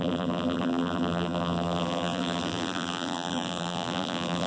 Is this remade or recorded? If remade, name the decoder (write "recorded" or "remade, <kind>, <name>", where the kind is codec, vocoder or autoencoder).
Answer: remade, vocoder, BigVGAN v2